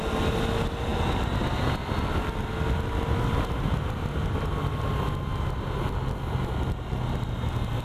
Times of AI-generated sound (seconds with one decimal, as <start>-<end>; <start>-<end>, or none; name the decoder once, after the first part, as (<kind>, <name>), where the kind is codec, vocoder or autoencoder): none